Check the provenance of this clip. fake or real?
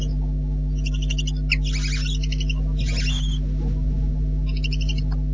real